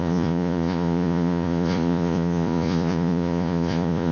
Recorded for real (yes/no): no